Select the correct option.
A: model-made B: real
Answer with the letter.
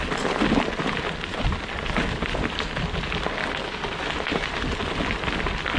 B